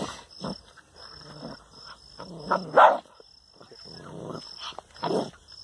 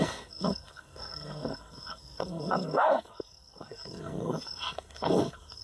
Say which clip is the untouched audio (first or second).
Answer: first